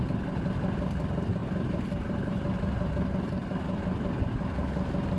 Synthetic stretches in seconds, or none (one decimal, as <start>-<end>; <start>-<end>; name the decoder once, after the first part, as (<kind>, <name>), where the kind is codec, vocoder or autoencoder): 1.4-2.9 (vocoder, BigVGAN v2)